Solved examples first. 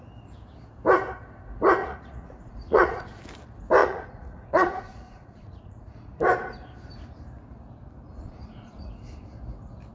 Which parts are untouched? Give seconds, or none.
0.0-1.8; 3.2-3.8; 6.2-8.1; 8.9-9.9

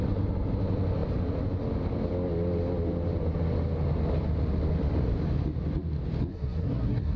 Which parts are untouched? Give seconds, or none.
0.0-6.3

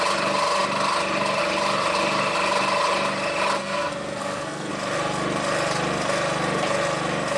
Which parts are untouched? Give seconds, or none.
0.0-3.6; 4.7-7.4